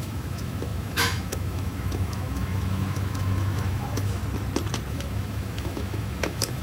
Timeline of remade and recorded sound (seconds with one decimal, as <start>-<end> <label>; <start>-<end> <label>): 0.0-4.2 remade; 4.2-4.9 recorded; 4.9-6.6 remade